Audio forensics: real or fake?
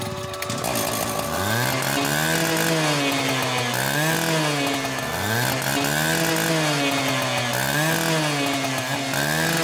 real